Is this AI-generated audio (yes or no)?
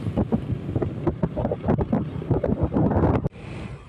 no